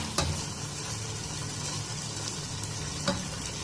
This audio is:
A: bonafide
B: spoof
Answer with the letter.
A